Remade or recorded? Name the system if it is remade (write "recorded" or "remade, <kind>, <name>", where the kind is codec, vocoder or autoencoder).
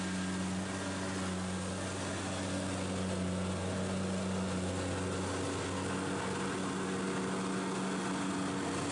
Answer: recorded